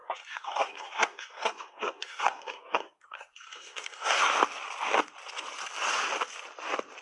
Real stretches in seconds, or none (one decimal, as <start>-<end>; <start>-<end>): 4.2-7.0